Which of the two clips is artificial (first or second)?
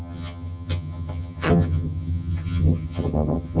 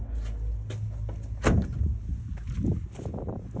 first